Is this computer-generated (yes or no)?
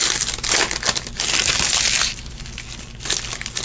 no